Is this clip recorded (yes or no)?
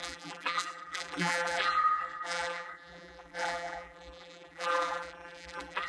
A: no